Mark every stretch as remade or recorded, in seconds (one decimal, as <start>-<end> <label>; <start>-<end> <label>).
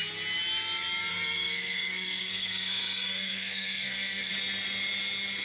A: 0.0-1.1 recorded; 1.1-4.3 remade; 4.3-5.4 recorded